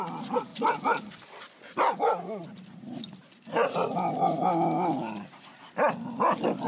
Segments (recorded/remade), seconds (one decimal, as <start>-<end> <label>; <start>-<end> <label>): 0.0-6.7 recorded